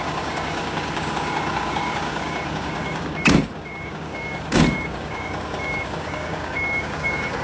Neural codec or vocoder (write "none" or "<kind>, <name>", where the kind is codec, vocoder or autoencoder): codec, DAC